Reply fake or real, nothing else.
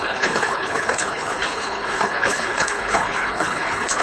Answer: fake